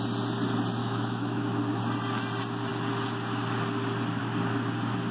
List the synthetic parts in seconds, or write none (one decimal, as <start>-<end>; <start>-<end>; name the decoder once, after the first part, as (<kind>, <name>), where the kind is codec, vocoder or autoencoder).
0.8-1.8 (autoencoder, DAC-VAE)